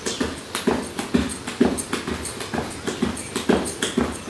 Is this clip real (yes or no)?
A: yes